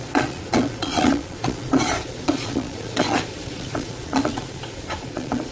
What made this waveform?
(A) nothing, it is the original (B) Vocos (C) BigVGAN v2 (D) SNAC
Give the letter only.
B